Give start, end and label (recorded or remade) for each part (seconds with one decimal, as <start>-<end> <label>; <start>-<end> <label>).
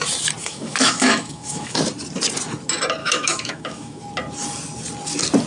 0.0-0.4 recorded; 0.4-1.8 remade; 1.8-3.0 recorded; 3.0-4.0 remade; 4.0-5.5 recorded